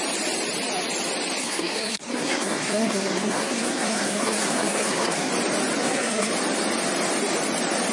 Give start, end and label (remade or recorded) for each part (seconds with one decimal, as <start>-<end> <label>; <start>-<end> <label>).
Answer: 0.0-1.4 recorded; 1.4-5.3 remade; 5.3-5.8 recorded; 5.8-6.3 remade; 6.3-7.9 recorded